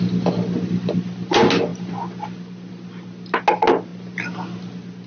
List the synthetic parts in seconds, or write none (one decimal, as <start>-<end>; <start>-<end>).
none